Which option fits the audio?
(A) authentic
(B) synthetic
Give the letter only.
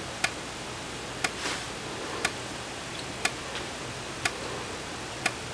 A